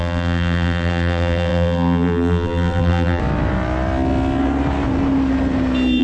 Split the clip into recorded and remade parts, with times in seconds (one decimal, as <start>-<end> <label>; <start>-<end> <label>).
0.0-3.2 remade; 3.2-6.0 recorded